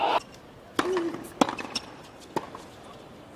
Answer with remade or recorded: recorded